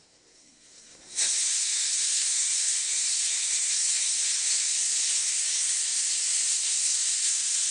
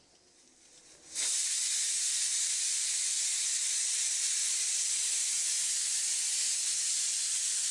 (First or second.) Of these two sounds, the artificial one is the first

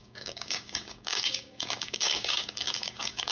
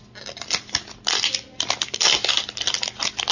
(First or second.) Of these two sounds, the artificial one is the first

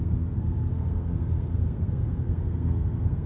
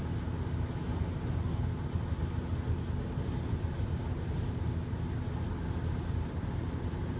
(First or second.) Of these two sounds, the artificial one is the first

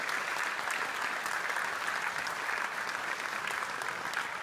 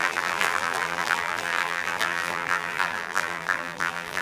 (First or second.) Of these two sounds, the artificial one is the second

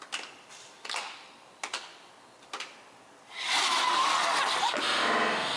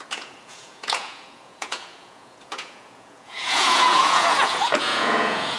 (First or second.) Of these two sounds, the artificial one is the second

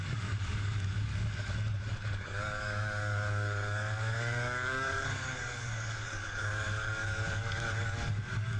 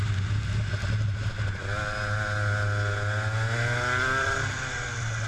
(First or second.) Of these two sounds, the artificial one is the first